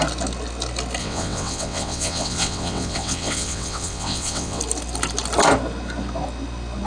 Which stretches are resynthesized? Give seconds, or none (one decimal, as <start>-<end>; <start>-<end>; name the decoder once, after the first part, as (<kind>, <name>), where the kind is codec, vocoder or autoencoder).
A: 1.0-4.6 (vocoder, WaveNeXt)

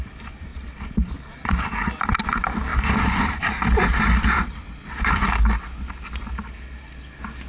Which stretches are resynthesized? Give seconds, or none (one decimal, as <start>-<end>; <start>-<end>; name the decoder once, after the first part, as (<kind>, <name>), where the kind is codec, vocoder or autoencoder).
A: none

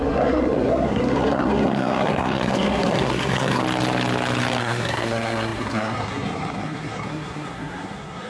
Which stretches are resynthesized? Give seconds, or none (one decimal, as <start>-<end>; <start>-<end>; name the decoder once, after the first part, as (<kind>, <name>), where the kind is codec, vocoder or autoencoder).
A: 0.0-3.6 (codec, SNAC); 4.6-8.3

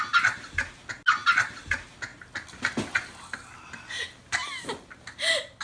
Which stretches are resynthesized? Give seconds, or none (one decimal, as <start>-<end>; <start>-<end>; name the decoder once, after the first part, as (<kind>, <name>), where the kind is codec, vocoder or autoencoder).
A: none

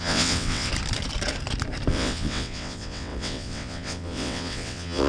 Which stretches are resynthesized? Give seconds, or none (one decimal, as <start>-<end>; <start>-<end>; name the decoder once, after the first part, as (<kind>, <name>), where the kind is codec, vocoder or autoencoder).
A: 0.0-0.7 (vocoder, WaveNeXt); 1.9-5.1

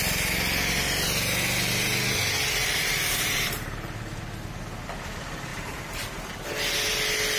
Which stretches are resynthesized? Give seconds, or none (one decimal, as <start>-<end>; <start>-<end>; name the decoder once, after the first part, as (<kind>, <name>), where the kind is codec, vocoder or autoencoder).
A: 2.6-4.2 (vocoder, BigVGAN v2); 5.5-6.3

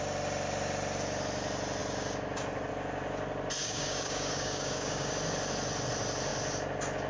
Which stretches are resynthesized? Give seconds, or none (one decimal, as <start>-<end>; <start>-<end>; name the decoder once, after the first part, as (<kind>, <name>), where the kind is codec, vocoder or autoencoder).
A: 3.6-5.1 (codec, DAC)